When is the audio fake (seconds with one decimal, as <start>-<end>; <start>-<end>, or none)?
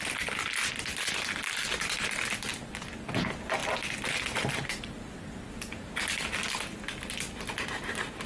none